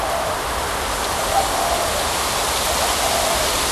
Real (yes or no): yes